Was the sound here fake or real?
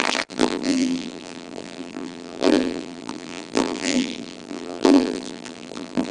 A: fake